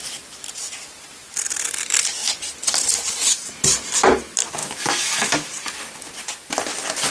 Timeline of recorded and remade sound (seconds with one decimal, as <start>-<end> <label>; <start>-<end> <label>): 0.0-4.6 recorded; 4.6-5.5 remade; 5.5-7.1 recorded